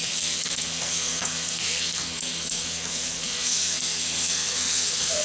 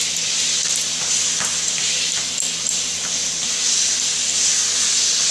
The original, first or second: second